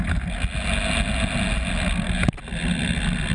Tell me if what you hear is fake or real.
real